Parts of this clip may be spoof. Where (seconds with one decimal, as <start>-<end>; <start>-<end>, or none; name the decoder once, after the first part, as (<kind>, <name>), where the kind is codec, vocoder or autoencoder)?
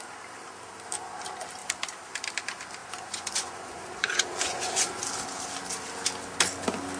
2.8-5.0 (vocoder, Vocos)